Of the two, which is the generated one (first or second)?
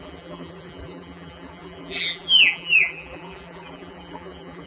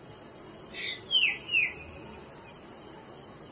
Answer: first